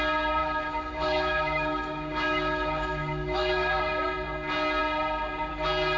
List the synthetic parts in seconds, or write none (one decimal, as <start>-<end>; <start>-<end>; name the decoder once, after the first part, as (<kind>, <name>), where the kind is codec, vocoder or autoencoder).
0.4-3.8 (autoencoder, DAC-VAE)